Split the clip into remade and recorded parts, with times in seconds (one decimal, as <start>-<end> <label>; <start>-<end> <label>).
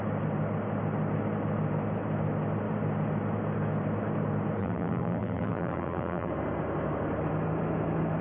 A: 0.0-4.6 recorded; 4.6-6.3 remade; 6.3-8.2 recorded